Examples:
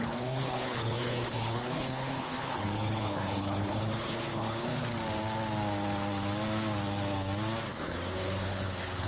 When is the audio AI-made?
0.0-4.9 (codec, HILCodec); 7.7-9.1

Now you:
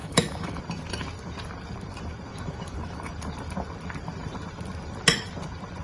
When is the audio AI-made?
0.0-0.6 (autoencoder, DAC-VAE); 2.3-3.1